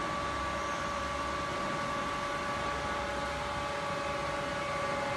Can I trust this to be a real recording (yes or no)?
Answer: yes